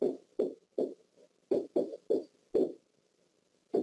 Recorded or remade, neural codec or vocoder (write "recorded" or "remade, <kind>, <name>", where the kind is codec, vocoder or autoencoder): recorded